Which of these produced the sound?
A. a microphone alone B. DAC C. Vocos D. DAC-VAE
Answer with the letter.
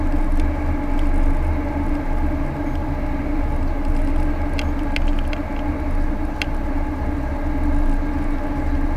A